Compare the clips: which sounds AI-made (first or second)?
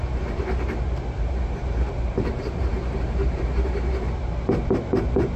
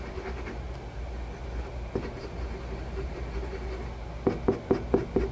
first